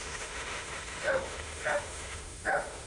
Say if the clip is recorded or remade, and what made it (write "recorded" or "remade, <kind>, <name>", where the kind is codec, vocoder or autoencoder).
remade, autoencoder, DAC-VAE